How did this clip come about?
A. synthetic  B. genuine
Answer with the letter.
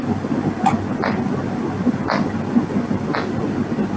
B